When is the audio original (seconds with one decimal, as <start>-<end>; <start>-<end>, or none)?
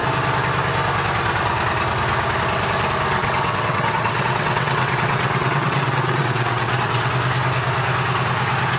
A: 0.0-3.2; 7.1-8.8